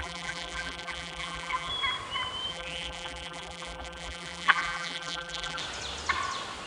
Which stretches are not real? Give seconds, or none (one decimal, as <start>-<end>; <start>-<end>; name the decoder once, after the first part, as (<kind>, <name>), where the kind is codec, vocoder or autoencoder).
0.0-1.7 (vocoder, BigVGAN v2); 2.5-5.6